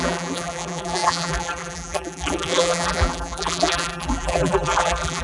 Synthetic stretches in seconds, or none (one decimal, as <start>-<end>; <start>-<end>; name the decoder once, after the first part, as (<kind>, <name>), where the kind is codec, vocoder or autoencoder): 0.0-5.2 (vocoder, BigVGAN v2)